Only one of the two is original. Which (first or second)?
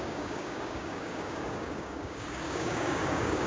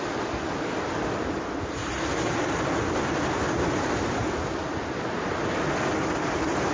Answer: second